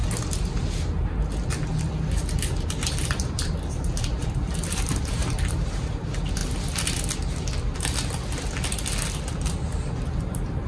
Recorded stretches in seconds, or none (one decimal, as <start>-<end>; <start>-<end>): 0.0-2.3; 6.4-10.2